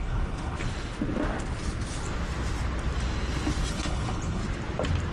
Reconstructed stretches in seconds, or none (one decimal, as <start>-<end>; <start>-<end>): 0.0-0.6; 3.7-4.4